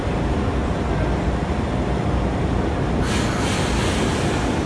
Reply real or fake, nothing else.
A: real